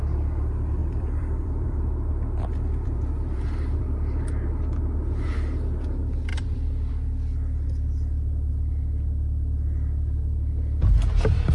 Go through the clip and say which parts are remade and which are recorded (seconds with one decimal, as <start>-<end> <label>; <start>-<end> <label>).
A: 0.0-0.8 recorded; 0.8-3.8 remade; 3.8-6.3 recorded; 6.3-6.9 remade; 6.9-11.5 recorded